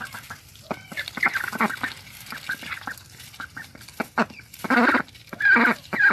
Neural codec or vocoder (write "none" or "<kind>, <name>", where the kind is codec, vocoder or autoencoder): none